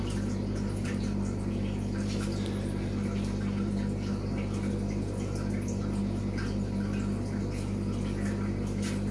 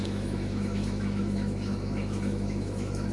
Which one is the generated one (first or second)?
second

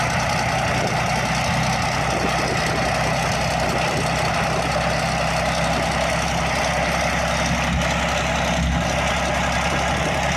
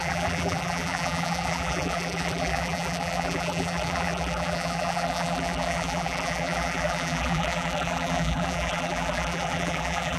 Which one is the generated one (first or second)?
second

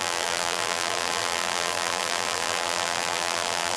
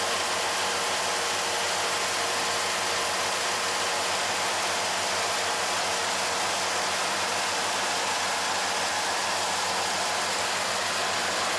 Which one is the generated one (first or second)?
first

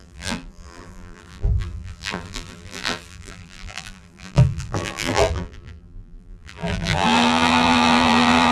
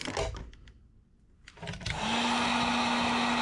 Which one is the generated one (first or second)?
first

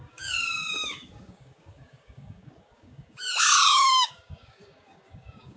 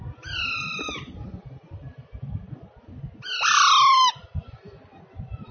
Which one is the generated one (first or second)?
first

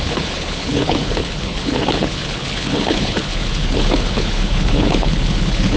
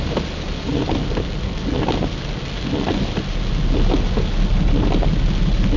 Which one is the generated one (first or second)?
first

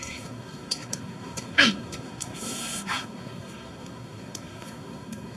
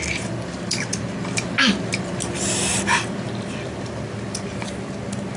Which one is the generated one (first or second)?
first